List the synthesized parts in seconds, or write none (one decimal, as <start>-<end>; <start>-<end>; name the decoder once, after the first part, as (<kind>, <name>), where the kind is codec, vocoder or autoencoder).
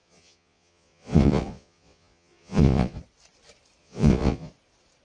0.0-3.0 (vocoder, Vocos); 3.8-4.5